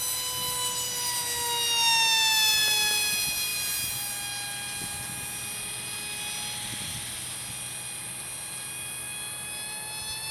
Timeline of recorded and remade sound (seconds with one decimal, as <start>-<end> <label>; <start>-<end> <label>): 0.0-10.3 recorded